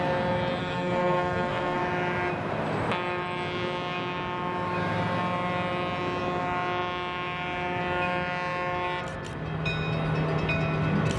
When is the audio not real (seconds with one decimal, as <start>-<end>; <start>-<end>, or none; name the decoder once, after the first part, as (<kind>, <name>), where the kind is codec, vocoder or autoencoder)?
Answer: 0.6-1.8 (codec, SNAC)